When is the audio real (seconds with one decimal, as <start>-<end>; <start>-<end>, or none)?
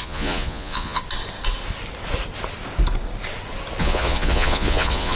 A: 1.0-3.8